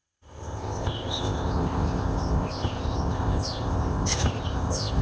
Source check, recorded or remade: remade